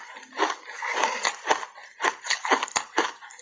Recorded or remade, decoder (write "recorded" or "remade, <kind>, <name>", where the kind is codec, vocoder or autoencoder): recorded